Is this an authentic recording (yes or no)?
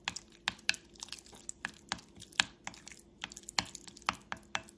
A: yes